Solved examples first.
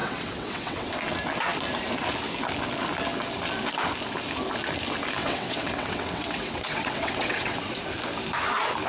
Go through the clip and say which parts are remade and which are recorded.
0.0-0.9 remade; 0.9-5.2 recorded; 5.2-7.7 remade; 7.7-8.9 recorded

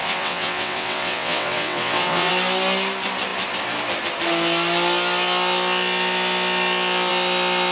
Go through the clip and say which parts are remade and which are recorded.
0.0-2.3 remade; 2.3-7.7 recorded